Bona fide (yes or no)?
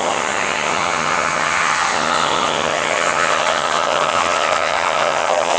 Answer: no